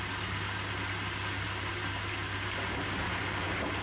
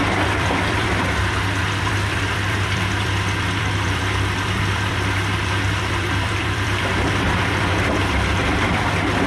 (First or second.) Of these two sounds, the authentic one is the first